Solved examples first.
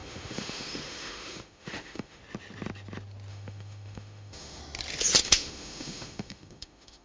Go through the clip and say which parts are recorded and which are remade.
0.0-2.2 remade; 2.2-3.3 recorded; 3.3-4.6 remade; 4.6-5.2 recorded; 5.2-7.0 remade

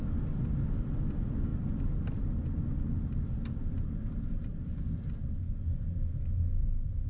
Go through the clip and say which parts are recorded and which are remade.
0.0-7.1 recorded

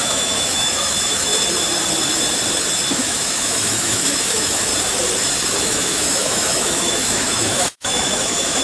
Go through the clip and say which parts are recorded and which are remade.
0.0-1.3 remade; 1.3-2.9 recorded; 2.9-4.7 remade; 4.7-5.6 recorded; 5.6-8.6 remade

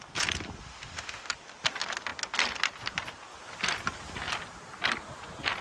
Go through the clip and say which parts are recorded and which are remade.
0.0-0.6 recorded; 0.6-1.3 remade; 1.3-5.6 recorded

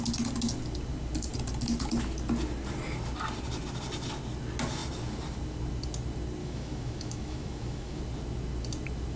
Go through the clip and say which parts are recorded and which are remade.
0.0-6.4 recorded; 6.4-8.0 remade; 8.0-9.2 recorded

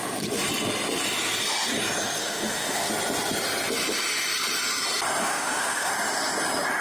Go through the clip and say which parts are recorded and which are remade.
0.0-2.2 recorded; 2.2-2.9 remade; 2.9-5.2 recorded; 5.2-5.9 remade; 5.9-6.8 recorded

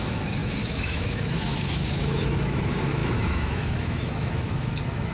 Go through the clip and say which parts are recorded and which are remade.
0.0-5.1 remade